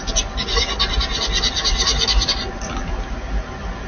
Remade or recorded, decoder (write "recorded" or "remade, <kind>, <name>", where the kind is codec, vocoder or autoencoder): recorded